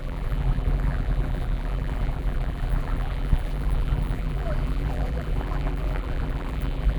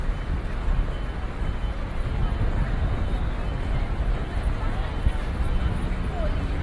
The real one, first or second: second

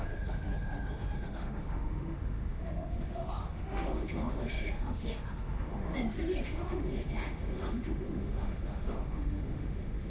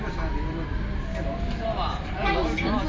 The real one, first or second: second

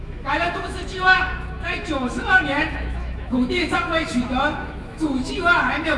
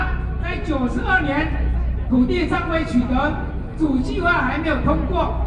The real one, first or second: second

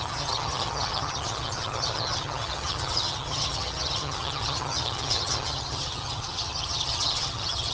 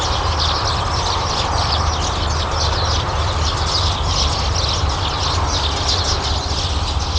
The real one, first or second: second